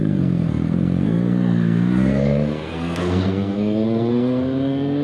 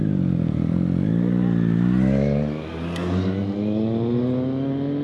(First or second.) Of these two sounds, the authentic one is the second